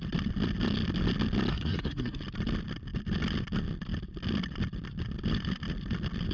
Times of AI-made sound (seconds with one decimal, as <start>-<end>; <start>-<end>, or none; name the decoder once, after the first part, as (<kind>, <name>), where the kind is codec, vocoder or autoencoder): 1.5-2.2 (codec, SNAC)